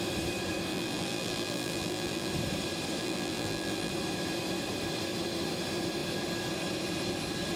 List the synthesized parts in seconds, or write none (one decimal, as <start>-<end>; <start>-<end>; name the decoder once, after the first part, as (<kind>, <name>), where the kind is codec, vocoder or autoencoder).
0.7-2.3 (vocoder, BigVGAN v2); 3.0-3.9